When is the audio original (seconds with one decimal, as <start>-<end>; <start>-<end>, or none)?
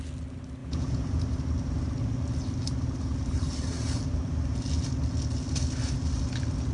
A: 0.0-0.6; 1.2-6.7